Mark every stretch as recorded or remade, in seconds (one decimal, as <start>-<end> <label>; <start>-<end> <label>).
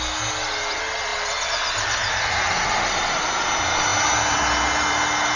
0.0-5.4 recorded